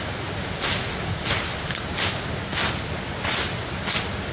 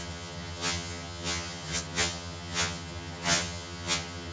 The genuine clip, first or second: first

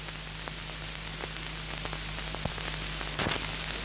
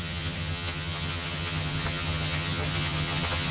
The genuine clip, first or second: first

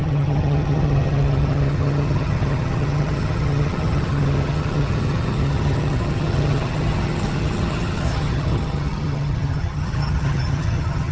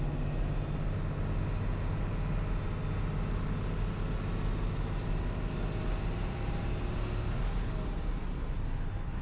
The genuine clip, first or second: second